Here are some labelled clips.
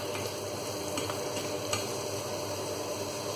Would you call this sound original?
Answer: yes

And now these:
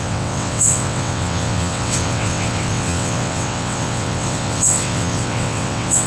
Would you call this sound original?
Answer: no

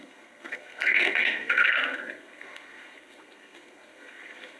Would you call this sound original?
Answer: no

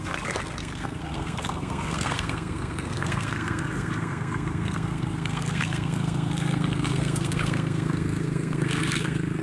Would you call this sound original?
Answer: no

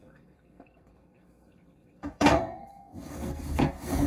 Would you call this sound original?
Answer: no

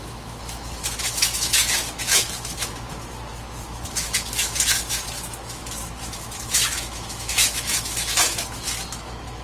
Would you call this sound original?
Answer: no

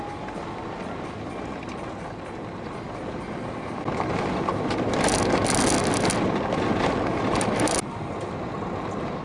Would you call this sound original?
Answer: yes